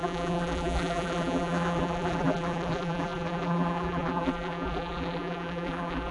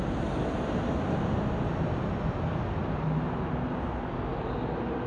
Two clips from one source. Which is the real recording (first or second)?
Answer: second